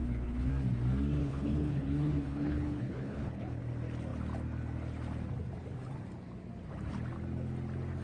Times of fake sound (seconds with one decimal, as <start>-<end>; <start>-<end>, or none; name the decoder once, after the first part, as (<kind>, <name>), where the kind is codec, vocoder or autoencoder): 0.0-0.5 (codec, HILCodec); 1.2-3.6